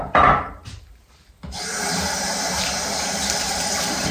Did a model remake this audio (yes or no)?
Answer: yes